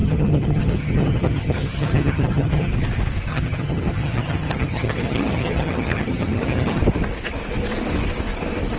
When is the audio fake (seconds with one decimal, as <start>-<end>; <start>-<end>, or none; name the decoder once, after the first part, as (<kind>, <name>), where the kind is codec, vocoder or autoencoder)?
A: 0.0-2.7 (vocoder, HiFi-GAN); 3.3-6.8